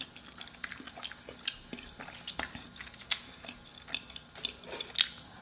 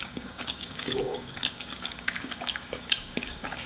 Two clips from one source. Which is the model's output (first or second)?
second